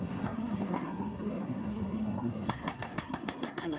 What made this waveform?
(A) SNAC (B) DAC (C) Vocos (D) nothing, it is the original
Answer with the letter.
A